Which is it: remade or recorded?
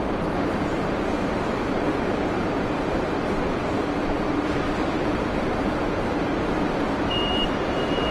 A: remade